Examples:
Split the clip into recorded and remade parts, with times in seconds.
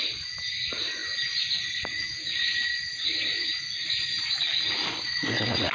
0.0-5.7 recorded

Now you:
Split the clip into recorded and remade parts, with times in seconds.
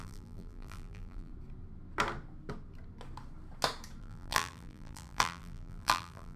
0.0-1.3 remade; 1.3-4.0 recorded; 4.0-6.4 remade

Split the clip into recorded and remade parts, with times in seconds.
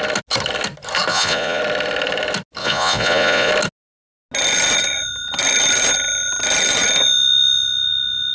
0.0-1.1 recorded; 1.1-1.6 remade; 1.6-2.6 recorded; 2.6-3.5 remade; 3.5-8.3 recorded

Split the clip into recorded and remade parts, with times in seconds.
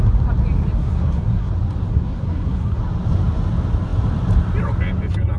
0.0-0.8 recorded; 0.8-1.5 remade; 1.5-1.9 recorded; 1.9-2.8 remade; 2.8-5.4 recorded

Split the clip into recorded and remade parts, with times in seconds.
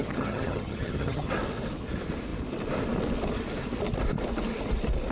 0.0-1.3 remade; 1.3-5.1 recorded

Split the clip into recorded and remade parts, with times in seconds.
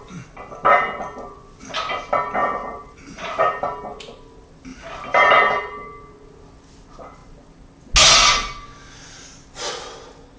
0.0-2.4 recorded; 2.4-3.3 remade; 3.3-4.7 recorded; 4.7-5.4 remade; 5.4-10.4 recorded